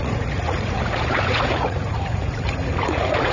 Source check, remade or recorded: remade